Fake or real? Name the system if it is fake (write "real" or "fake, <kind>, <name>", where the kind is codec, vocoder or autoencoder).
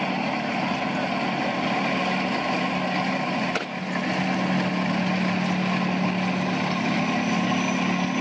real